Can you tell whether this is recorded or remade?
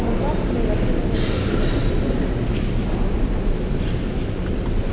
recorded